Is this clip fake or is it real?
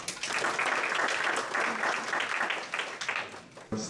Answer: real